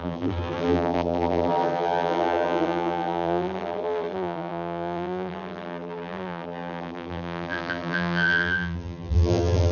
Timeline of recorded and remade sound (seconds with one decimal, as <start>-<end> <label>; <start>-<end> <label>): 0.0-9.7 remade